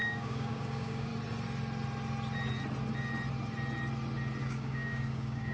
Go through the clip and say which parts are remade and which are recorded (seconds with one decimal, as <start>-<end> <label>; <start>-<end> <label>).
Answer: 0.0-1.1 remade; 1.1-4.4 recorded; 4.4-5.5 remade